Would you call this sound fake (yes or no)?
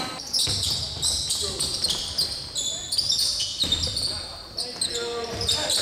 no